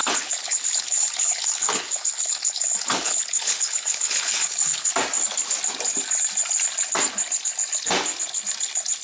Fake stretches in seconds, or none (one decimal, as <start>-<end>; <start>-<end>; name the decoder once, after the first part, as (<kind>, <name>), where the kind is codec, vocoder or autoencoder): 0.0-4.9 (codec, HILCodec)